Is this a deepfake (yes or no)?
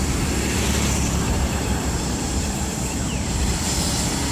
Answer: yes